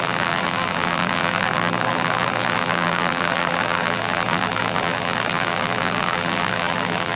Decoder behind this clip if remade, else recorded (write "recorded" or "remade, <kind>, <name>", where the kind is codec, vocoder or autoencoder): remade, vocoder, BigVGAN v2